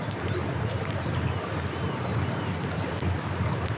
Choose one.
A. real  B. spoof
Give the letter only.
A